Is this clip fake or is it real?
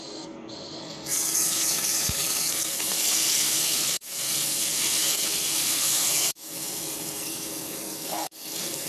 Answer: fake